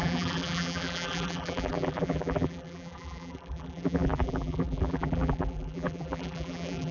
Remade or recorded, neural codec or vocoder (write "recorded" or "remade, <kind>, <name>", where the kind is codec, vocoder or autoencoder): remade, vocoder, BigVGAN v2